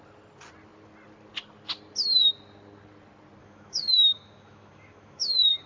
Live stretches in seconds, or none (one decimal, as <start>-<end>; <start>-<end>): 0.0-3.4